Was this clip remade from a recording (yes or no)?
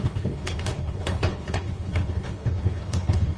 yes